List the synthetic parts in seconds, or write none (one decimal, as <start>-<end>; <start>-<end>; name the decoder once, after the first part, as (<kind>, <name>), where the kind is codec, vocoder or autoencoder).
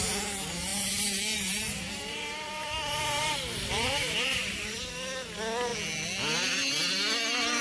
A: 0.7-4.9 (vocoder, BigVGAN v2)